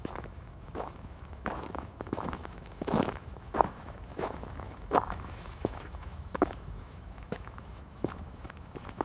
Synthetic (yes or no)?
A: yes